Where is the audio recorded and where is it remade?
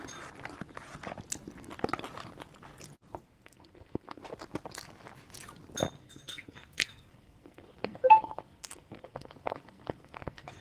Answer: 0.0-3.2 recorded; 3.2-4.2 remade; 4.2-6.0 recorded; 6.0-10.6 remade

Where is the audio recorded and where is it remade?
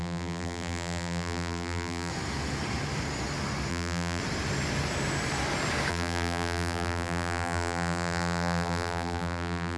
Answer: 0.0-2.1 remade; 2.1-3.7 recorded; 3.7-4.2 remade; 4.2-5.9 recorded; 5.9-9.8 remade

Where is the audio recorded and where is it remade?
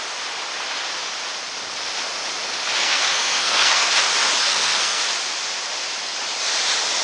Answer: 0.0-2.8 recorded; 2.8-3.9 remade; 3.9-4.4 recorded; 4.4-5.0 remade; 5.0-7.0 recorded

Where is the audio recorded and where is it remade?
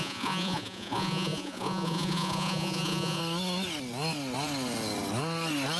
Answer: 0.0-3.2 remade; 3.2-5.8 recorded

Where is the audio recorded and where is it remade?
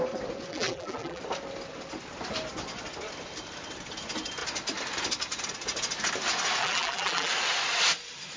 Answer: 0.0-0.5 recorded; 0.5-1.2 remade; 1.2-6.6 recorded; 6.6-7.3 remade; 7.3-8.4 recorded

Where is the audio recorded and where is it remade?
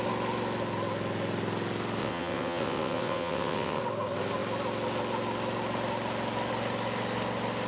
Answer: 0.0-2.0 recorded; 2.0-3.8 remade; 3.8-7.7 recorded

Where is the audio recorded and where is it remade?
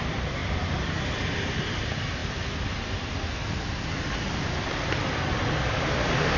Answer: 0.0-2.2 remade; 2.2-5.0 recorded; 5.0-6.4 remade